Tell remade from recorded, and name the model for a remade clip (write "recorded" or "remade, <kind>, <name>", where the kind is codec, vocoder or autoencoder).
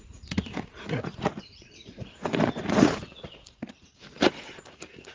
remade, vocoder, Vocos